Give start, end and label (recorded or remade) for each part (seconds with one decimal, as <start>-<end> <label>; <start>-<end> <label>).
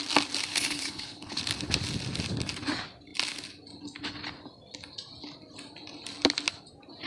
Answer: 0.0-0.5 recorded; 0.5-1.4 remade; 1.4-7.1 recorded